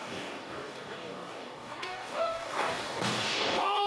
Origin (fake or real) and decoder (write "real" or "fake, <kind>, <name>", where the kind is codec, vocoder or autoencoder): fake, codec, DAC